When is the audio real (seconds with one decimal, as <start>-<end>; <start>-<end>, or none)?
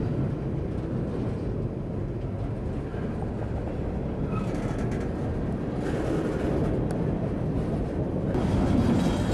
0.0-2.9; 3.6-9.3